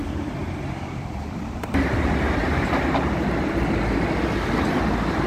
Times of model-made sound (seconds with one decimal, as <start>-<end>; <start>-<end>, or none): 0.4-3.6